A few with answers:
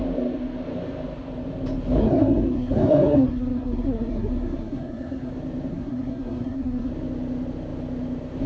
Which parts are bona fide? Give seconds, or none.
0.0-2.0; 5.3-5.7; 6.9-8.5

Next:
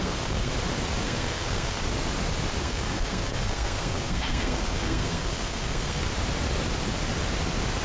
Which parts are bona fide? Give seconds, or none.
0.5-1.0; 1.8-2.6; 6.0-7.8

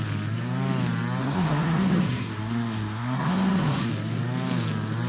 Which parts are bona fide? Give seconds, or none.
0.0-1.2; 3.9-5.1

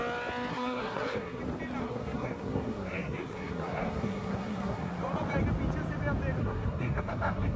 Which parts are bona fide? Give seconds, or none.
0.0-0.5; 1.4-1.8; 4.9-6.4

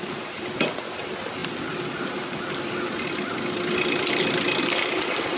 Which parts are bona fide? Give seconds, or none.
0.0-5.4

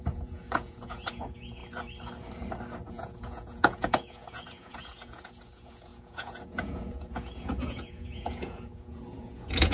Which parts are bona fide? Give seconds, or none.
1.6-2.9

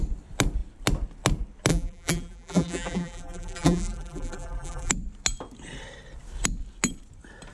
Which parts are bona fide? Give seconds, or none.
0.0-1.7; 4.9-7.5